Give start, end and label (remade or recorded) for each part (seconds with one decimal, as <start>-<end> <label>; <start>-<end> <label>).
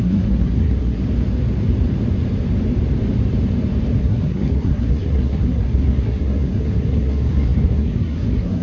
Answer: 0.0-1.0 remade; 1.0-4.0 recorded; 4.0-8.6 remade